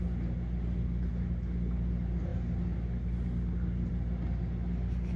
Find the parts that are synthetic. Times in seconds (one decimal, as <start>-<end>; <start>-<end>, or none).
none